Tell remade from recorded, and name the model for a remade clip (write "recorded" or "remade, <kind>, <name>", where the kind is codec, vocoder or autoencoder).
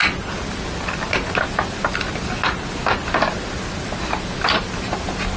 recorded